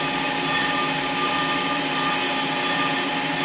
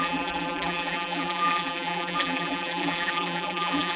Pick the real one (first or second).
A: first